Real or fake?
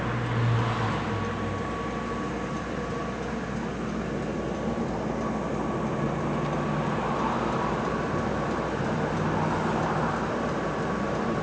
real